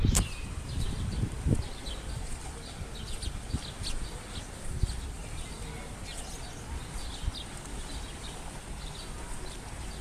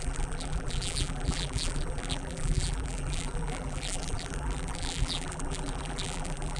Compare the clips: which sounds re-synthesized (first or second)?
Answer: second